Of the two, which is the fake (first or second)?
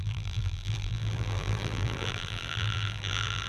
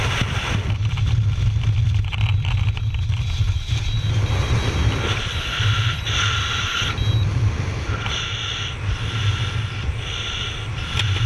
first